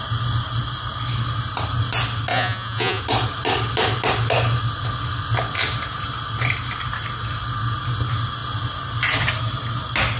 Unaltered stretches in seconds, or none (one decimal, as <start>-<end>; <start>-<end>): 0.0-2.3; 3.0-10.2